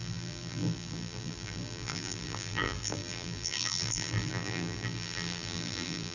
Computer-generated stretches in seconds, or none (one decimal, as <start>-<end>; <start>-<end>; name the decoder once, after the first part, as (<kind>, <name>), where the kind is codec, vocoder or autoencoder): 0.0-6.1 (vocoder, BigVGAN v2)